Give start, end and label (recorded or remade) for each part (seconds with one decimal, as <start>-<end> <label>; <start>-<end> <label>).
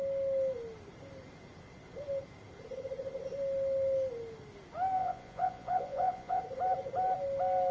0.0-5.0 recorded; 5.0-6.4 remade; 6.4-7.7 recorded